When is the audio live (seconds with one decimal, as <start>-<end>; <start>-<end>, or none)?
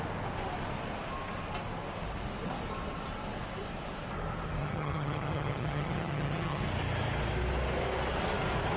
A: 0.0-4.6; 6.6-8.8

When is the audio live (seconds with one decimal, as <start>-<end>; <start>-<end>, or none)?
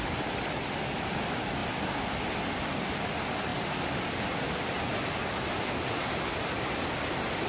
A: 0.0-7.5